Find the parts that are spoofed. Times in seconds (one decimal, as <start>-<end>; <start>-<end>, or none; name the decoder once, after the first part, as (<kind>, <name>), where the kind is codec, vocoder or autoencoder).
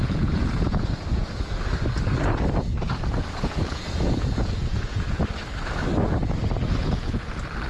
0.0-1.6 (vocoder, Vocos); 2.8-5.2; 6.8-7.3